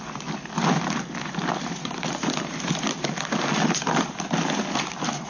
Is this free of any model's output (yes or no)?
no